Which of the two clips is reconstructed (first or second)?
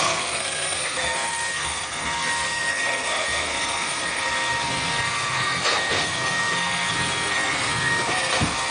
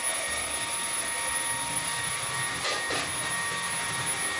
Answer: first